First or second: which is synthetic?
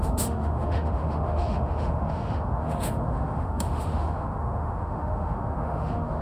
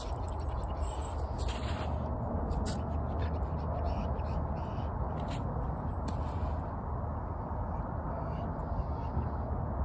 first